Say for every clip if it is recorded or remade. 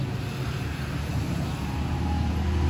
recorded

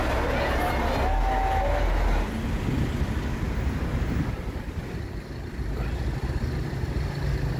recorded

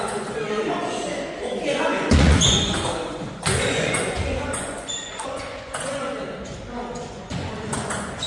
remade